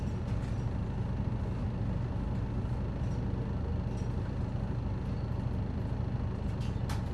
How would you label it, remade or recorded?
recorded